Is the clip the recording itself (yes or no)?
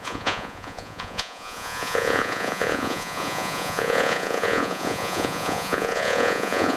no